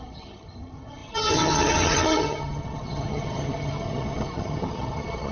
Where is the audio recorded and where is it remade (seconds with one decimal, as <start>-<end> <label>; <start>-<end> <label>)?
0.0-5.3 remade